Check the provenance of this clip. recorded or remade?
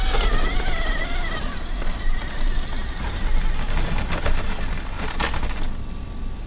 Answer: recorded